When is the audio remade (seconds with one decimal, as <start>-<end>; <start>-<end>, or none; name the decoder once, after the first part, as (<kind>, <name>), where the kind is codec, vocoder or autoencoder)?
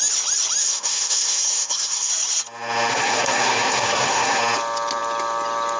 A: 0.6-2.1 (codec, SNAC); 2.9-4.4